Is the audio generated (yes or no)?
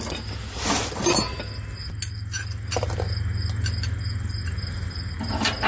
no